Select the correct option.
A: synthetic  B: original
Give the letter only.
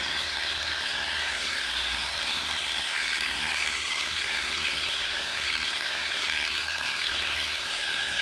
A